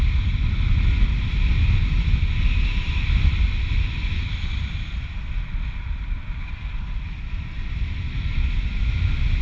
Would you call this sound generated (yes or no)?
no